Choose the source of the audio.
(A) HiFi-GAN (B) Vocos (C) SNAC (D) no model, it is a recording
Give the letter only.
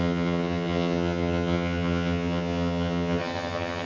A